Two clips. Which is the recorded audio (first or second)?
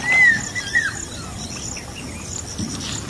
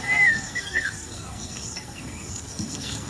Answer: first